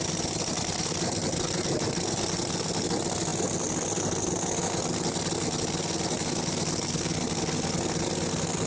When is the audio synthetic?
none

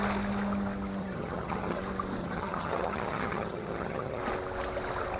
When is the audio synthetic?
1.0-1.8 (vocoder, HiFi-GAN); 2.2-4.2

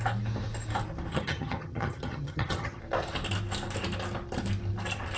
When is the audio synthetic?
1.1-2.8 (vocoder, HiFi-GAN)

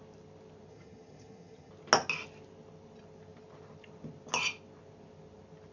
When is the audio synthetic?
0.7-1.7 (vocoder, HiFi-GAN)

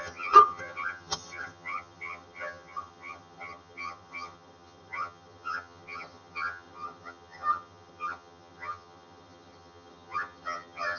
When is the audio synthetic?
0.0-11.0 (vocoder, HiFi-GAN)

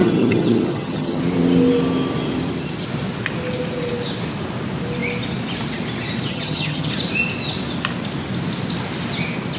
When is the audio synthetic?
0.0-1.2 (vocoder, HiFi-GAN); 6.3-6.9

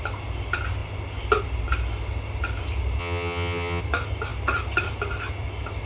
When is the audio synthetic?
3.0-3.8 (vocoder, HiFi-GAN)

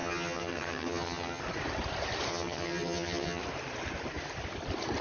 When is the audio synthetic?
0.0-1.4 (vocoder, HiFi-GAN); 2.3-3.4